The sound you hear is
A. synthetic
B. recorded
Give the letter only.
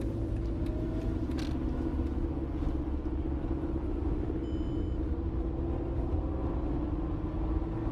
B